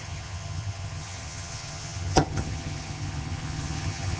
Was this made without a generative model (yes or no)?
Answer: no